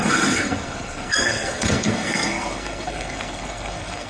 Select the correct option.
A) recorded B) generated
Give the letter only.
B